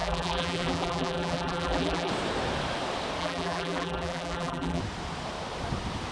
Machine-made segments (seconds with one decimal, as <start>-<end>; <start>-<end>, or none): 0.0-2.1; 3.2-4.8